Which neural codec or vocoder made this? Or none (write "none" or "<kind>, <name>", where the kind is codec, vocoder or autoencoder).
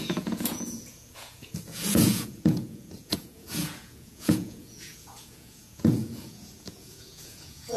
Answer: vocoder, Vocos